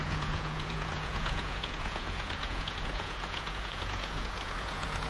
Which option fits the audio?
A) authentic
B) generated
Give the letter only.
B